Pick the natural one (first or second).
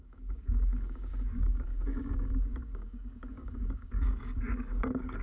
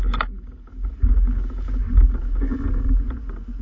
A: second